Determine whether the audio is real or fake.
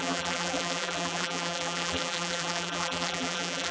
fake